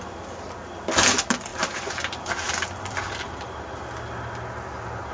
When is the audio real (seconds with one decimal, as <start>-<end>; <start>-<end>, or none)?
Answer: 0.0-1.5; 3.8-5.1